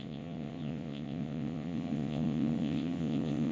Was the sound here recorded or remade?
remade